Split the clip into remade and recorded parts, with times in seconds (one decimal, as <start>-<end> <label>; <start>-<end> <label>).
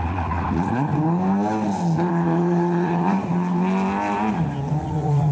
0.0-0.9 remade; 0.9-2.1 recorded; 2.1-3.3 remade; 3.3-4.8 recorded; 4.8-5.3 remade